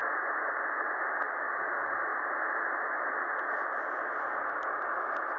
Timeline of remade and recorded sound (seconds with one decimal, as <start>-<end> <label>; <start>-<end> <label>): 0.0-1.1 remade; 1.1-5.4 recorded